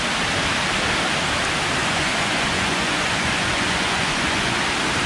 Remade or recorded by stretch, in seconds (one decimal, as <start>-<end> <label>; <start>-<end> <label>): 0.0-1.8 recorded; 1.8-4.6 remade; 4.6-5.1 recorded